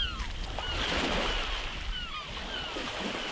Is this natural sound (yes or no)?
yes